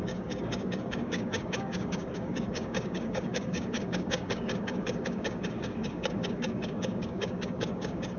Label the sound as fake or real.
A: fake